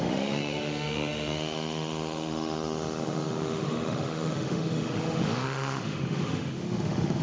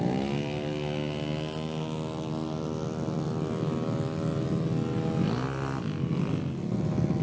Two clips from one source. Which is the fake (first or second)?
first